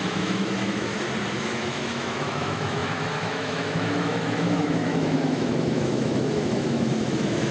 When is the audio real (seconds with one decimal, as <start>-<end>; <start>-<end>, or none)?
0.9-1.4